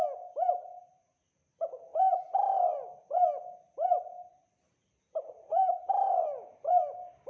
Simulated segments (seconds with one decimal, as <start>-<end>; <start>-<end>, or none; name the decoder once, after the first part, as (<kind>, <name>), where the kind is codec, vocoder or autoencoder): 4.2-7.3 (vocoder, BigVGAN v2)